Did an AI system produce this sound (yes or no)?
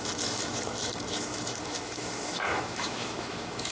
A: yes